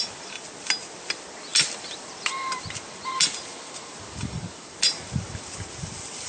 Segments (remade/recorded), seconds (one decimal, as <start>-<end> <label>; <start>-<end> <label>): 0.0-6.3 recorded